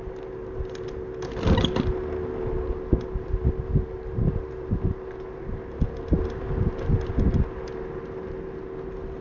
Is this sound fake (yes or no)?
no